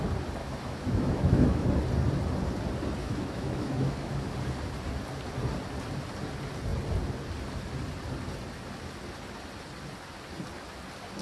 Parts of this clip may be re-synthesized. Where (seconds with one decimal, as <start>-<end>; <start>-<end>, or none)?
0.4-1.8; 3.0-4.3